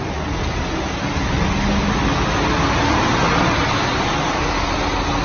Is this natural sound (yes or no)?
yes